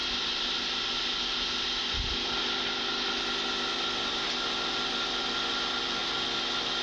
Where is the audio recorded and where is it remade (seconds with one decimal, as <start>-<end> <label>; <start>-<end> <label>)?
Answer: 0.0-6.8 recorded